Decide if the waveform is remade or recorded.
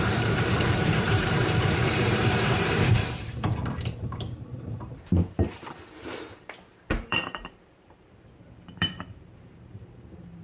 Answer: remade